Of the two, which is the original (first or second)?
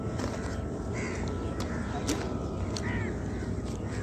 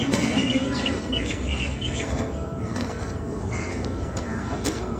first